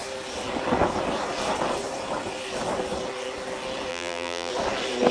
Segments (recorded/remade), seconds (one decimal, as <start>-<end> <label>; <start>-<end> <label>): 0.0-3.9 recorded; 3.9-4.5 remade; 4.5-5.1 recorded